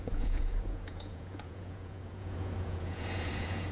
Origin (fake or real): fake